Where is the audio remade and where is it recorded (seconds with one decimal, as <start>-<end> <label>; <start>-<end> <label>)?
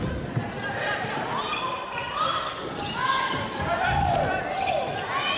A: 0.0-5.4 recorded